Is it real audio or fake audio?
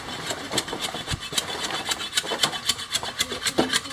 real